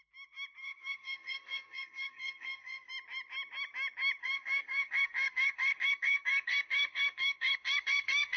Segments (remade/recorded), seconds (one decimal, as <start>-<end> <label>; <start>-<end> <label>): 0.0-0.6 recorded; 0.6-2.9 remade; 2.9-4.2 recorded; 4.2-8.4 remade